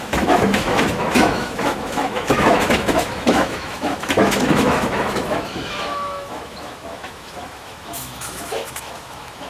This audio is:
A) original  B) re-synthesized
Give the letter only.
B